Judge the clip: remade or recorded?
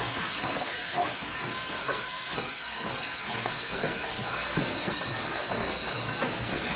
remade